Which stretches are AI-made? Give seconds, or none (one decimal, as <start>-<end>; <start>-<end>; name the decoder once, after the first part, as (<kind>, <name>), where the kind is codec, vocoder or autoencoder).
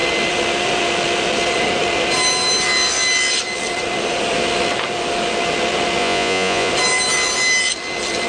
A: 6.0-6.7 (vocoder, Vocos)